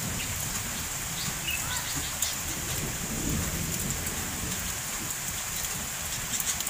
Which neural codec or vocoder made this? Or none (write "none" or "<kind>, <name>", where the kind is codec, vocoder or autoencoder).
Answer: none